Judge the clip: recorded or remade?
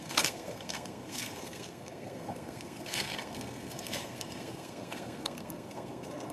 remade